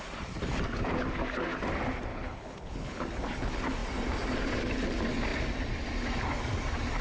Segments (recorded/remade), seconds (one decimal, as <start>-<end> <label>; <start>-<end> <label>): 0.0-2.1 recorded; 2.1-3.0 remade; 3.0-7.0 recorded